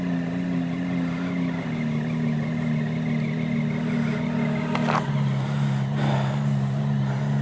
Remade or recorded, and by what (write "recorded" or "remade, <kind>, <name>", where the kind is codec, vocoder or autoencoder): recorded